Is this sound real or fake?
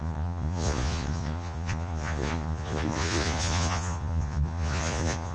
fake